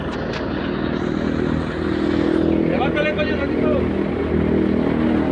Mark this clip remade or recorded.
recorded